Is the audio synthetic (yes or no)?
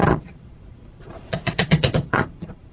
yes